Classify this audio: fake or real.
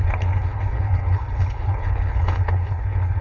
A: fake